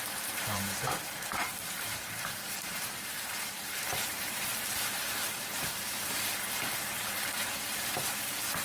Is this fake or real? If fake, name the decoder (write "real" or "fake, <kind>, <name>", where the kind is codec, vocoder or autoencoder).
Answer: fake, vocoder, BigVGAN v2